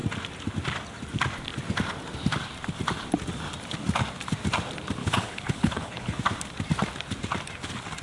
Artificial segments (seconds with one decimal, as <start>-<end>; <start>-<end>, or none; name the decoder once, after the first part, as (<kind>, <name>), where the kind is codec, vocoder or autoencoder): 5.0-6.2 (codec, HILCodec)